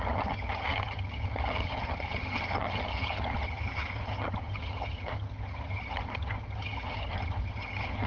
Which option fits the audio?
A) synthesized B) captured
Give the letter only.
A